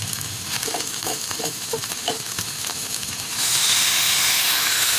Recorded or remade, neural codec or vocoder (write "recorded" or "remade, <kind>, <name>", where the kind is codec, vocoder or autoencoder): remade, autoencoder, DAC-VAE